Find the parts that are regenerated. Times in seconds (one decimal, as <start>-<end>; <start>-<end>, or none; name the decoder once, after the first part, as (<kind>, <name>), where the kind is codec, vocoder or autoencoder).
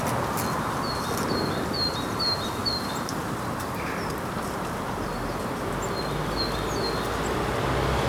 2.6-5.4 (vocoder, BigVGAN v2)